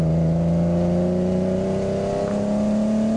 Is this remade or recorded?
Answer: recorded